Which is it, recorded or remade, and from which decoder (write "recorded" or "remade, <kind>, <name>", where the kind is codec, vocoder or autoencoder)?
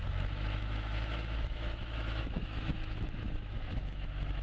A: remade, autoencoder, DAC-VAE